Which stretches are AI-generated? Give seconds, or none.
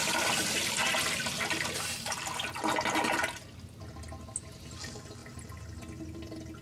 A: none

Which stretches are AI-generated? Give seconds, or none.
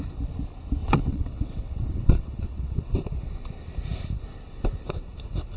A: 0.8-2.8 (vocoder, WaveNeXt)